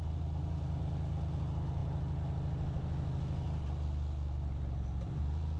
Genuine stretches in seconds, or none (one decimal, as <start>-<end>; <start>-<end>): 0.0-5.6